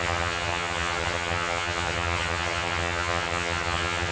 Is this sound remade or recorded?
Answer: remade